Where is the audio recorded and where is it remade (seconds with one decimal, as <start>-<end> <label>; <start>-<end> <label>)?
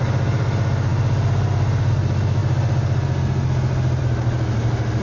0.0-5.0 recorded